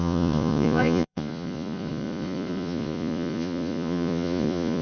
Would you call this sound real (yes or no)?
no